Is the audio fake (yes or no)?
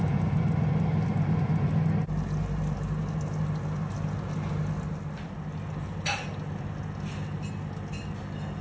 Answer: no